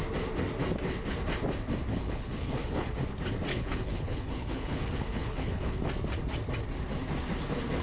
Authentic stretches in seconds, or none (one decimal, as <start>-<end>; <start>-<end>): 0.0-1.9; 2.9-3.5; 5.8-7.8

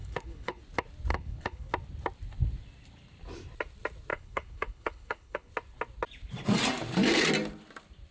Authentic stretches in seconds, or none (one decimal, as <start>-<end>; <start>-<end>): 0.6-1.1; 1.7-4.1; 5.5-8.1

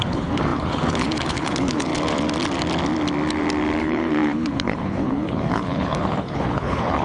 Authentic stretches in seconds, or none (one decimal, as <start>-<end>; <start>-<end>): 1.9-3.8

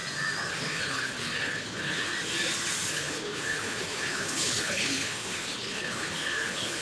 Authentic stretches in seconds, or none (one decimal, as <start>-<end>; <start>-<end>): 0.0-0.5; 2.1-2.9

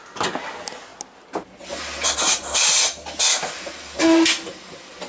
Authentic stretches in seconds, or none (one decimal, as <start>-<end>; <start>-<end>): 0.0-5.1

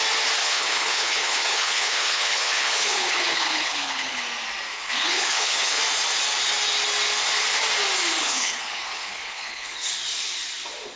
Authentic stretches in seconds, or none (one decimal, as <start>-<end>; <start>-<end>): 0.0-0.4; 4.2-4.7; 5.8-8.2; 9.9-11.0